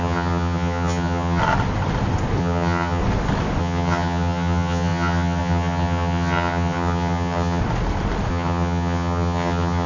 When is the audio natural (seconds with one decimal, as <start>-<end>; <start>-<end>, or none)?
1.4-2.4; 3.0-3.6; 7.6-8.3